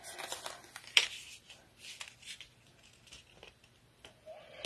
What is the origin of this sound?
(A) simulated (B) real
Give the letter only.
B